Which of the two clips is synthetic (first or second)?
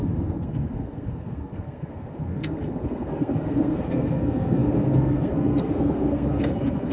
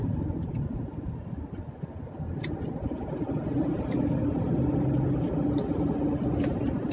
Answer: first